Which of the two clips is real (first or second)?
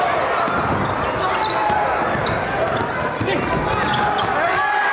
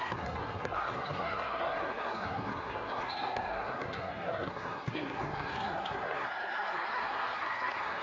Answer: first